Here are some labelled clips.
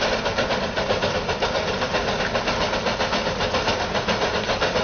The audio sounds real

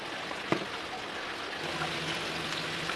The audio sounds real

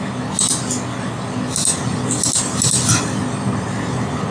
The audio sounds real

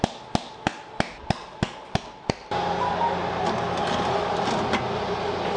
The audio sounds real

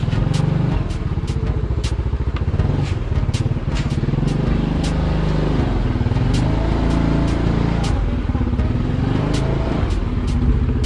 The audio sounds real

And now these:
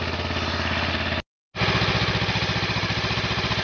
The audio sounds real